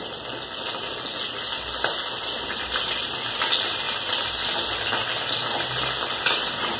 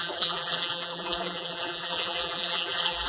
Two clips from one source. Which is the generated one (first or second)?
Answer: second